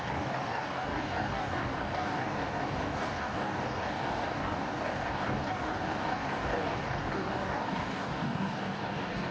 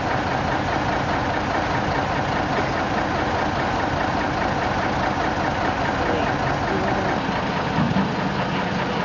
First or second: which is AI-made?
first